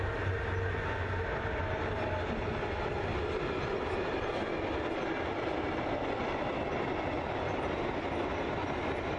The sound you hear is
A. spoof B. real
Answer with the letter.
B